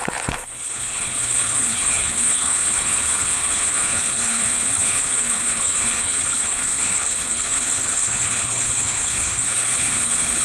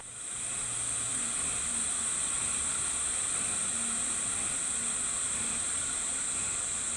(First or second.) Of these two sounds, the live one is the second